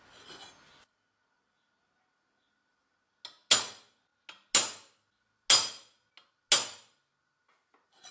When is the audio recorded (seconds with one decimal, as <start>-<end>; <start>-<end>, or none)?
0.0-8.1